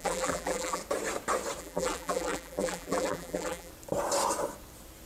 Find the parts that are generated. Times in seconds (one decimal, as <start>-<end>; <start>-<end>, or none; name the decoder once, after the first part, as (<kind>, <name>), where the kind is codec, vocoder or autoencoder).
0.0-0.8 (vocoder, BigVGAN v2); 1.6-3.7